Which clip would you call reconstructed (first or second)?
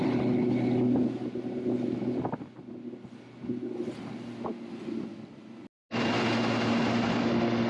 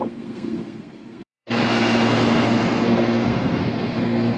second